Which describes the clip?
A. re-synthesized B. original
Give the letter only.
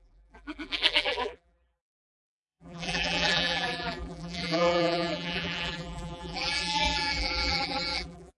A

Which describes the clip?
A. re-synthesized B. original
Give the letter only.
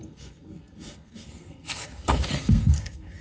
A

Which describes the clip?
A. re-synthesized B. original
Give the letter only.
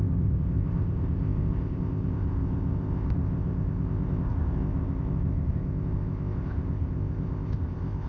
A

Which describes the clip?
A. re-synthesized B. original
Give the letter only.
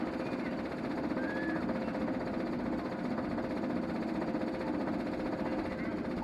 B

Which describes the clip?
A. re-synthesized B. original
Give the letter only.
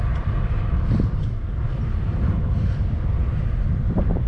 A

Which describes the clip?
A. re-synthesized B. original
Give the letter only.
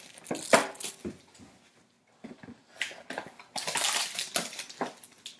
B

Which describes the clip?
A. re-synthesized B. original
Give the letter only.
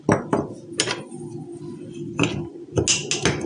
B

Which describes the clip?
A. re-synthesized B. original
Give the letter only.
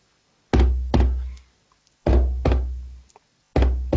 B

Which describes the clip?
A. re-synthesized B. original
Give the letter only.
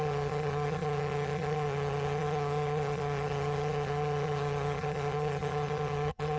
A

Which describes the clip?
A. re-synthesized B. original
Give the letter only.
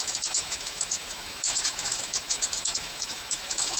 A